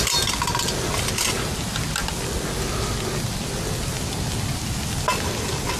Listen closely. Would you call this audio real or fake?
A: real